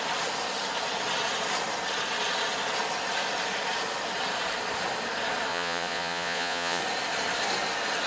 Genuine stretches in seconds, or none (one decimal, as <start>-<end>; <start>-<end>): 0.0-5.5; 6.8-8.1